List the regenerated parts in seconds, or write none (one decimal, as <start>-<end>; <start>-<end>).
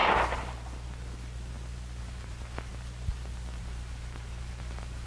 2.0-2.7; 3.6-5.1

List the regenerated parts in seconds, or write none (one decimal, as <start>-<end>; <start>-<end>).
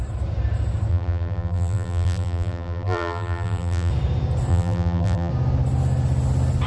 0.9-3.9; 4.5-5.3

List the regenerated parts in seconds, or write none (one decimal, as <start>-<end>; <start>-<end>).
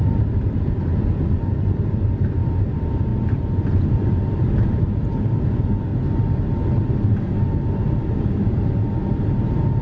0.0-5.9; 6.9-9.8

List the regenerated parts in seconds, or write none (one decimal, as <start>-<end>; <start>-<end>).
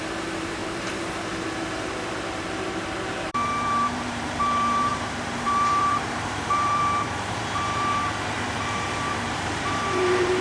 0.0-10.4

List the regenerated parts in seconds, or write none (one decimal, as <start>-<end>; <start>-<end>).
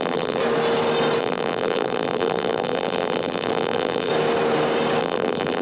0.0-0.4; 1.2-4.1; 5.0-5.6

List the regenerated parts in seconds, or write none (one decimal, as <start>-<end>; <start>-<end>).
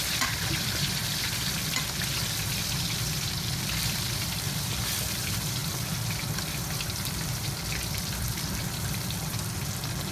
0.0-1.0; 2.4-5.6; 6.5-10.1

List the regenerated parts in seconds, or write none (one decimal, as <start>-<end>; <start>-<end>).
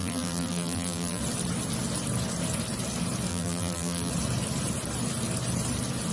0.0-1.2; 3.3-4.1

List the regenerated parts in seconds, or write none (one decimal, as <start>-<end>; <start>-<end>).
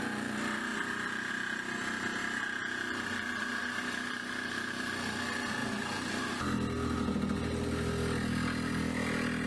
4.2-4.9; 5.6-6.3